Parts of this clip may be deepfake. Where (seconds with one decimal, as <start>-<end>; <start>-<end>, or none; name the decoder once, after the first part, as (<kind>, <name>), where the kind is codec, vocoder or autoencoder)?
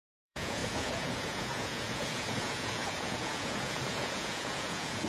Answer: 0.0-5.1 (vocoder, Vocos)